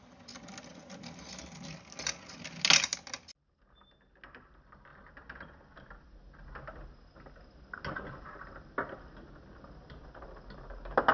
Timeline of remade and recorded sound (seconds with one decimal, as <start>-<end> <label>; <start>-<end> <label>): 0.0-11.1 recorded